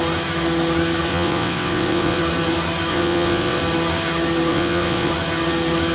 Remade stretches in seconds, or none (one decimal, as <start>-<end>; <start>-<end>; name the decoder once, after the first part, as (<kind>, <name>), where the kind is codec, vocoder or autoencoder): 1.1-2.2 (vocoder, WaveNeXt); 2.9-3.6; 4.5-5.1